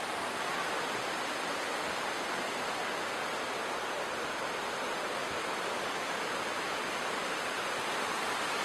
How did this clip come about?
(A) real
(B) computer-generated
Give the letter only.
A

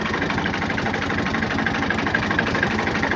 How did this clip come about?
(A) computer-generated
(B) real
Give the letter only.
B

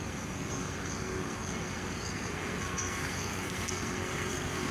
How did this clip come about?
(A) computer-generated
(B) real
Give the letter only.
A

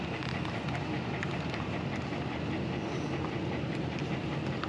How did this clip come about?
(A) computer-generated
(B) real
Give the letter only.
B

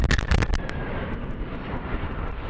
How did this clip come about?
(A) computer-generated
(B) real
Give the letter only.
A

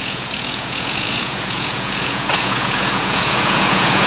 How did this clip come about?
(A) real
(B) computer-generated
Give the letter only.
B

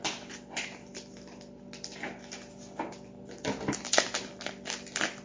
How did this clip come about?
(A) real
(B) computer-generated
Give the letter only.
A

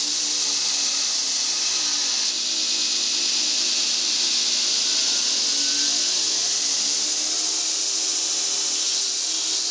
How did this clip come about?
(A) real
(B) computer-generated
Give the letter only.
A